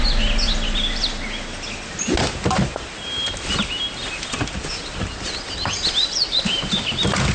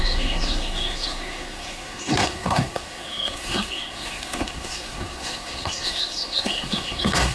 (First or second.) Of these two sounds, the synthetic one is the second